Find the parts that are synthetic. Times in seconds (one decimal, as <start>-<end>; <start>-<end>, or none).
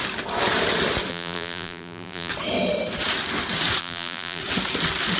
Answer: 1.1-2.3; 3.8-4.4